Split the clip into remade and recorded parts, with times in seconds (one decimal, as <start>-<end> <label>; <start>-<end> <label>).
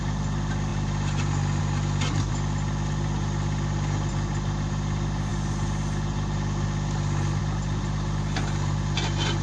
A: 0.0-9.4 recorded